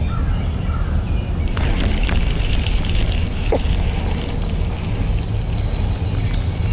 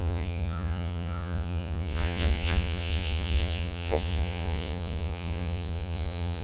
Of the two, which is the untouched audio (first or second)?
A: first